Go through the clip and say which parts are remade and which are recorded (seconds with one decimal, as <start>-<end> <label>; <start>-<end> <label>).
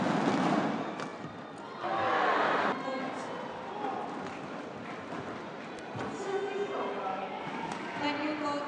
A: 0.0-7.1 recorded; 7.1-8.0 remade; 8.0-8.7 recorded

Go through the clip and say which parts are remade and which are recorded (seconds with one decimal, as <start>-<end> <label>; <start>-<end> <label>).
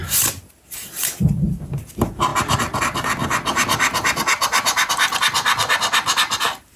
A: 0.0-6.8 recorded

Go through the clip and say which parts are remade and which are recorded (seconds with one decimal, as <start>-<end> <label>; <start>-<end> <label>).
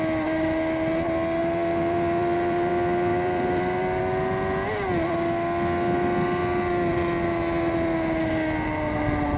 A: 0.0-1.4 recorded; 1.4-2.7 remade; 2.7-3.1 recorded; 3.1-4.0 remade; 4.0-9.4 recorded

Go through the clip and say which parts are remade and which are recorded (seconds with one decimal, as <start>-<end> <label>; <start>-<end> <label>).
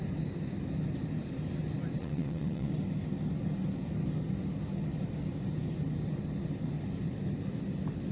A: 0.0-2.0 recorded; 2.0-2.7 remade; 2.7-8.1 recorded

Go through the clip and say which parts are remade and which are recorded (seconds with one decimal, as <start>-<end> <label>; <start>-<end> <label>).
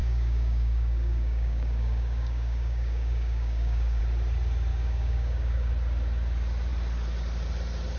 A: 0.0-4.0 remade; 4.0-4.7 recorded; 4.7-5.7 remade; 5.7-8.0 recorded